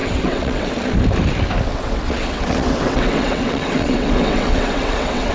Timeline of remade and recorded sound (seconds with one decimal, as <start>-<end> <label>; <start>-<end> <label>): 0.0-0.7 remade; 0.7-1.7 recorded; 1.7-5.3 remade